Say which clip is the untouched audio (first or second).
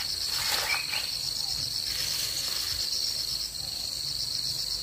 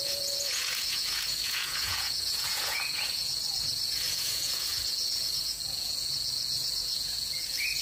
first